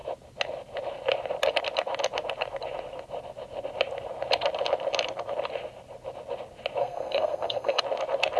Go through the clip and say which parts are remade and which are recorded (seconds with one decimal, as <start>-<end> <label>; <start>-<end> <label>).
0.0-6.8 recorded; 6.8-7.8 remade; 7.8-8.4 recorded